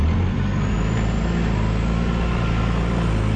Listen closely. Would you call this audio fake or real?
real